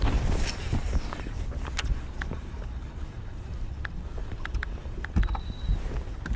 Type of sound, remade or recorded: recorded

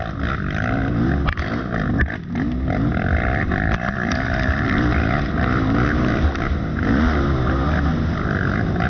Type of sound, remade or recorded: recorded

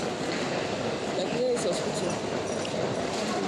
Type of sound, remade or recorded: recorded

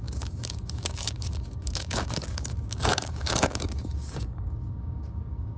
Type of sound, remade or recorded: remade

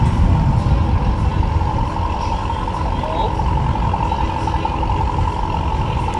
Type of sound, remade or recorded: recorded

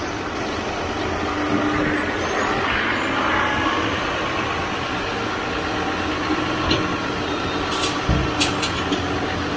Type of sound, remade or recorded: recorded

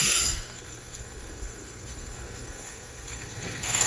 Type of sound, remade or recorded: remade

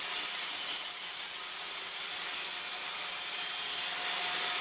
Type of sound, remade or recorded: recorded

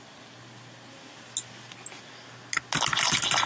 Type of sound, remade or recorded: recorded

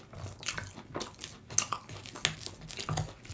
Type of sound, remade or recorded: recorded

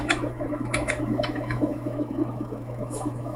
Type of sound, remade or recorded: remade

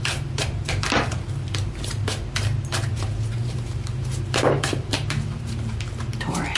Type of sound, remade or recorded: remade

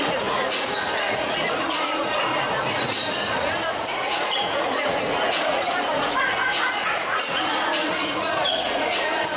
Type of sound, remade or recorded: remade